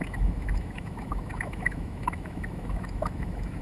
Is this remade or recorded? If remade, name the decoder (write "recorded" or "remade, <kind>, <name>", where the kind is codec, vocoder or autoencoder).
remade, autoencoder, DAC-VAE